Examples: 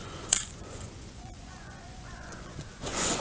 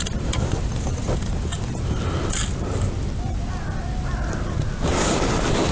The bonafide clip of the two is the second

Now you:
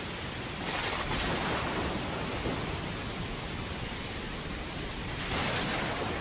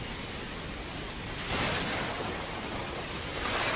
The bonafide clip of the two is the second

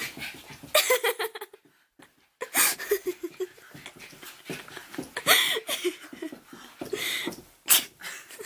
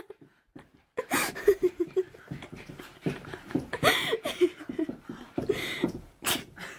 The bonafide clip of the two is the first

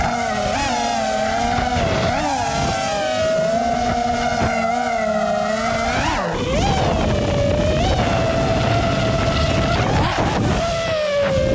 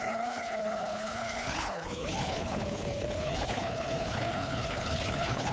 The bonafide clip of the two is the first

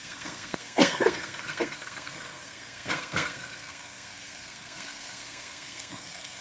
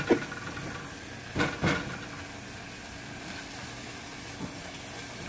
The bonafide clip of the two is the second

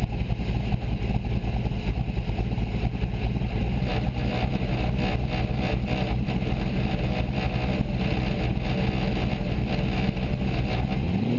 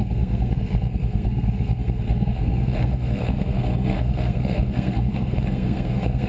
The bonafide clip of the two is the first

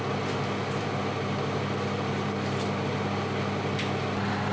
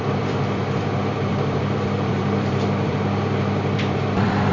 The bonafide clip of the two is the first